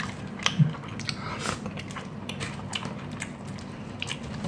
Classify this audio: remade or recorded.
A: recorded